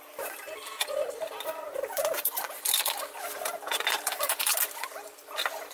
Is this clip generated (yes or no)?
yes